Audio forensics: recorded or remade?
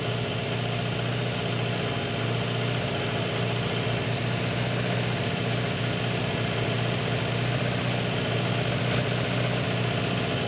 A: recorded